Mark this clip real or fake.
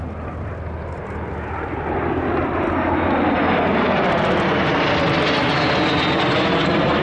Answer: real